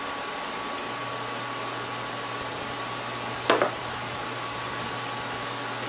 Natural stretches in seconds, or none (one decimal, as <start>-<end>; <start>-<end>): 0.0-5.9